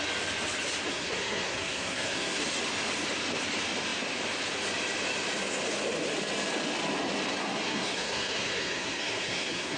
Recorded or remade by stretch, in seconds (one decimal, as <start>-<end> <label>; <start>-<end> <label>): 0.0-0.9 recorded; 0.9-2.4 remade; 2.4-7.4 recorded; 7.4-9.8 remade